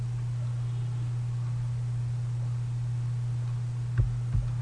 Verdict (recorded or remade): recorded